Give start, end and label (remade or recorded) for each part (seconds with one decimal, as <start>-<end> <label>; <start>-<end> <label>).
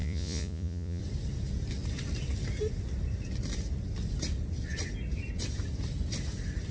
0.0-1.0 remade; 1.0-6.7 recorded